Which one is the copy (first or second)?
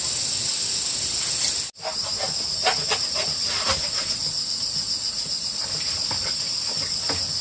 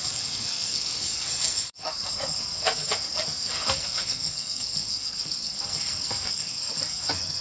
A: second